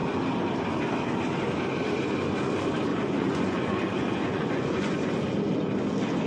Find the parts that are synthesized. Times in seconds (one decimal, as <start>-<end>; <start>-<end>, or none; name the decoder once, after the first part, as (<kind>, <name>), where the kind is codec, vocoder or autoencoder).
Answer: 2.9-5.1 (vocoder, Vocos)